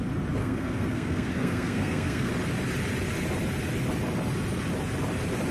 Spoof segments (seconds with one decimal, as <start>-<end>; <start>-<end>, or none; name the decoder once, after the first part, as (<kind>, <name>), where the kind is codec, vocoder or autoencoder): 0.4-2.3 (codec, SNAC)